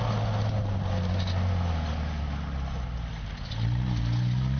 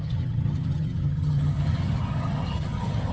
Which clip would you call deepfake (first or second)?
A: second